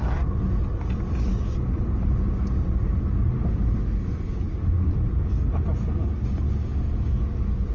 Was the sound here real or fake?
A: real